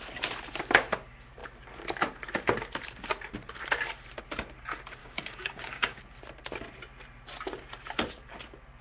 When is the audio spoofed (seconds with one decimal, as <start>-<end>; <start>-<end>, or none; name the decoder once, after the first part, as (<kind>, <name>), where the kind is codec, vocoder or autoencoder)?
5.0-6.0 (codec, DAC)

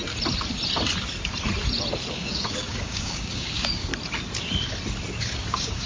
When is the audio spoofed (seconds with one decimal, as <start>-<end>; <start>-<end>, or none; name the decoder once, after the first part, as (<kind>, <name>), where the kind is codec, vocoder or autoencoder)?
2.1-3.9 (codec, DAC); 5.2-5.9

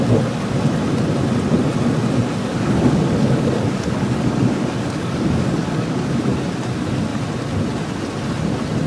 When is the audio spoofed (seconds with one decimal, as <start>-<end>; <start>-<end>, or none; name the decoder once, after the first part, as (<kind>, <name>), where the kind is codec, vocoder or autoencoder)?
2.4-6.2 (codec, DAC)

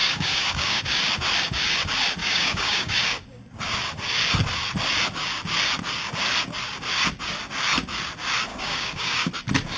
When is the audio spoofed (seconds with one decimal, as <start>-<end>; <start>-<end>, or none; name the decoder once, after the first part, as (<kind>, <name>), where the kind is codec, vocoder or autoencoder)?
0.0-0.8 (codec, DAC); 2.2-3.0; 8.5-9.3

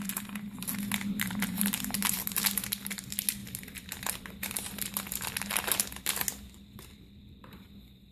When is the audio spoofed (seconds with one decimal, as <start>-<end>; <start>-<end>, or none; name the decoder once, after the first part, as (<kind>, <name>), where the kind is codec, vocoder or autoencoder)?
none

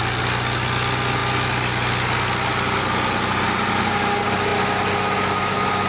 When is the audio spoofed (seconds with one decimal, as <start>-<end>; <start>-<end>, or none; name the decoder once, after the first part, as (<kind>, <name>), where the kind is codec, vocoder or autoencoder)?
none